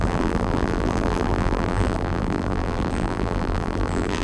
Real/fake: fake